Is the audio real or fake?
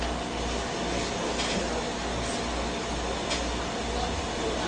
real